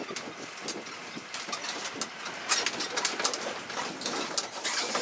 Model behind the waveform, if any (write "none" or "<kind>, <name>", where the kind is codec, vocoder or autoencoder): none